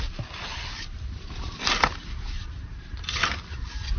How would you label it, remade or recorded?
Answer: recorded